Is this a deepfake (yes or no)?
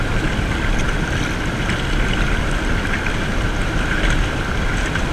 no